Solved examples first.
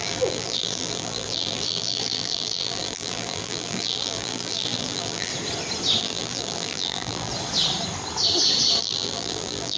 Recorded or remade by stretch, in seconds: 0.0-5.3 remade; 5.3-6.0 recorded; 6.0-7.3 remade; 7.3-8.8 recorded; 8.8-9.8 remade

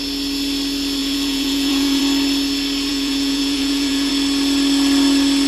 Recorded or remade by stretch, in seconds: 0.0-1.0 recorded; 1.0-2.0 remade; 2.0-2.9 recorded; 2.9-4.1 remade; 4.1-5.5 recorded

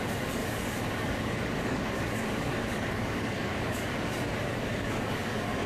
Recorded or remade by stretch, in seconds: 0.0-5.7 remade

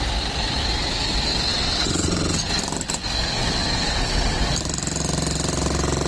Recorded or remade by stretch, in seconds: 0.0-1.5 recorded; 1.5-2.5 remade; 2.5-3.4 recorded; 3.4-4.4 remade; 4.4-6.1 recorded

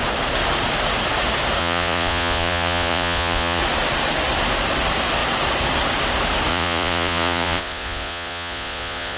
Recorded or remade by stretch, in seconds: 0.0-1.6 recorded; 1.6-3.6 remade; 3.6-6.5 recorded; 6.5-9.2 remade